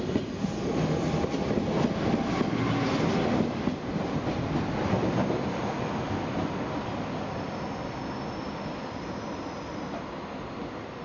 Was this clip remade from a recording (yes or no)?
no